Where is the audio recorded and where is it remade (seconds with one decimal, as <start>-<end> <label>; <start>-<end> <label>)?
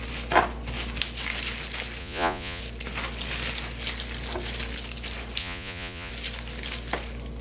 0.0-2.0 recorded; 2.0-2.6 remade; 2.6-5.4 recorded; 5.4-6.1 remade; 6.1-7.4 recorded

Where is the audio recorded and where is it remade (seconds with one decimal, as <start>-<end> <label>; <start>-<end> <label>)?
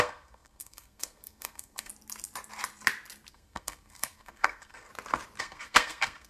0.0-1.9 remade; 1.9-3.3 recorded; 3.3-4.9 remade; 4.9-5.4 recorded; 5.4-6.3 remade